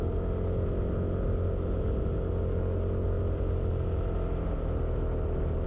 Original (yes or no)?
yes